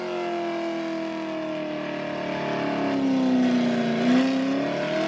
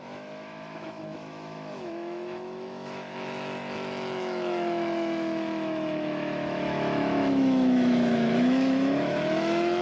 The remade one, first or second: second